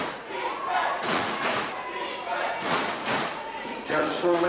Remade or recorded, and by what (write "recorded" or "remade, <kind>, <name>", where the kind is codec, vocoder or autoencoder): remade, vocoder, Vocos